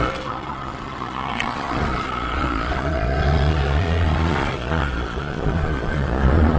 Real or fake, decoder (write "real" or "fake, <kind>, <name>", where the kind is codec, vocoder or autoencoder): fake, vocoder, Vocos